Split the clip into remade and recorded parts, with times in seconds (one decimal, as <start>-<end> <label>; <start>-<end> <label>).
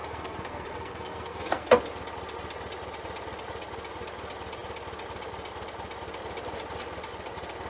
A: 0.0-1.8 remade; 1.8-7.7 recorded